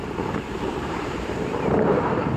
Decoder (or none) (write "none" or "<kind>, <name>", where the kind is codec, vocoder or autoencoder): vocoder, BigVGAN v2